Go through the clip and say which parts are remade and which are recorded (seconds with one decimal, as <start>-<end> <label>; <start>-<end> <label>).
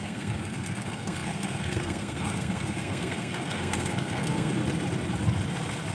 0.0-4.6 remade; 4.6-5.9 recorded